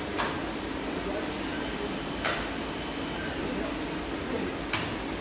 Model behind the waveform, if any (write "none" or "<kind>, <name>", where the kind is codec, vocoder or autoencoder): none